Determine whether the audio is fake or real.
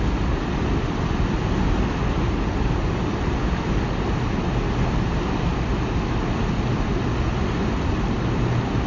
real